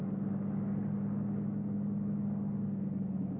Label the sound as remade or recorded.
recorded